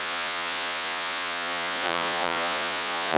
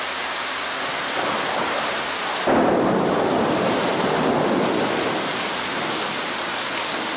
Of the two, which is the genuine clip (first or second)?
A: second